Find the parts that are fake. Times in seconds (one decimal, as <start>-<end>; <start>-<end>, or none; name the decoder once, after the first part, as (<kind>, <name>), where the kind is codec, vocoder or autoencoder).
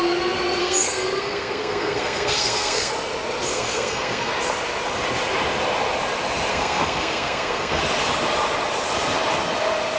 0.6-2.9 (codec, SNAC); 3.5-4.3; 6.5-7.8